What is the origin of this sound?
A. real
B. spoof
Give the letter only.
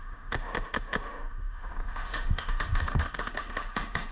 B